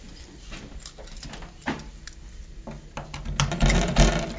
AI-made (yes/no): no